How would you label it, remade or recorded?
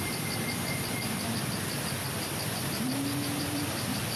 remade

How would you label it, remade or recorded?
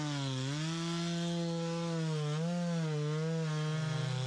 recorded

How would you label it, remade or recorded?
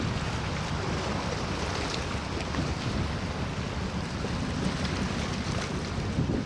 recorded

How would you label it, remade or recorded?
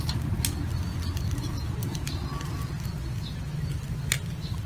recorded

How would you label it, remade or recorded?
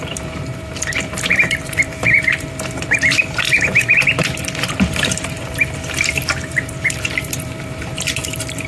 remade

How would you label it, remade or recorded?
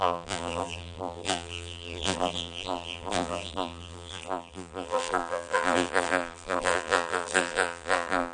remade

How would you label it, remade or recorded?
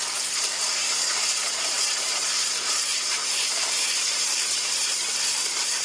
remade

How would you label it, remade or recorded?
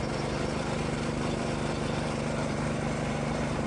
remade